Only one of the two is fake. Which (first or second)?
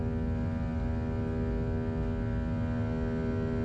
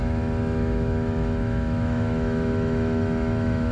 second